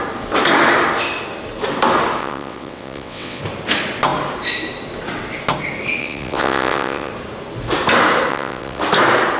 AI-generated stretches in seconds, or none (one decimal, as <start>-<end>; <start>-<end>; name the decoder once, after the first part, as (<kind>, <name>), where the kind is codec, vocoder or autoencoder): 2.2-3.4 (vocoder, WaveNeXt); 6.0-7.1; 8.3-8.8